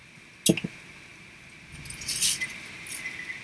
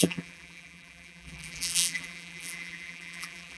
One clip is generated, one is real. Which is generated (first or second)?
second